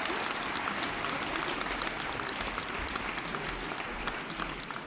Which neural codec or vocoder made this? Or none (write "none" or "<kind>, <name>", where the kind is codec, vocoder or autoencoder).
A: none